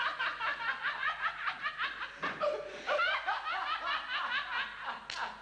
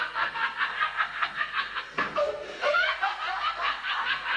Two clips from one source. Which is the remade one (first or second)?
second